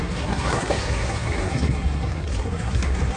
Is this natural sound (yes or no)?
no